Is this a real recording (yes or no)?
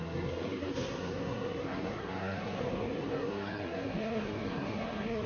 no